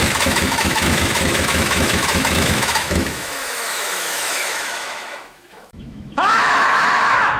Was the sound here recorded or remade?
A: remade